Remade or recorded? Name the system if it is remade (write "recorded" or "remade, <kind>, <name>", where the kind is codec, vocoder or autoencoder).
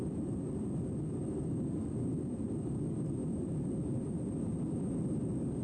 recorded